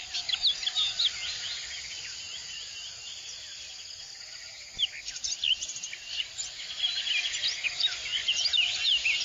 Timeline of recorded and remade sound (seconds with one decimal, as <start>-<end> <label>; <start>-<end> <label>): 0.0-9.2 recorded